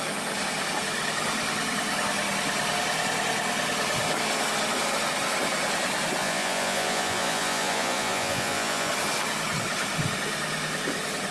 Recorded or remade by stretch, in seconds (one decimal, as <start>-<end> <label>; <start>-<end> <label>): 0.0-6.2 recorded; 6.2-8.9 remade; 8.9-11.3 recorded